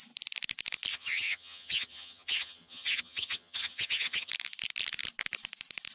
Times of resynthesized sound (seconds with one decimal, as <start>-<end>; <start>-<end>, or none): 0.9-4.3